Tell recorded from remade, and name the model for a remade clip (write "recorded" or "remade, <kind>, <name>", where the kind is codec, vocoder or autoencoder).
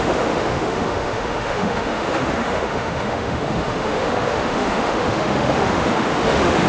remade, autoencoder, DAC-VAE